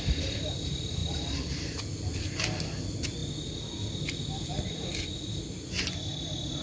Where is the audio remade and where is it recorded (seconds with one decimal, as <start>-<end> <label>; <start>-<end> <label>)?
0.0-6.6 recorded